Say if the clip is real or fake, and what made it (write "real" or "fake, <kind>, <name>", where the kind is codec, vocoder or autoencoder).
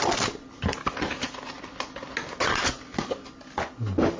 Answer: real